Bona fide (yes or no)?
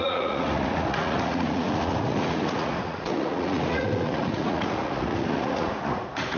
no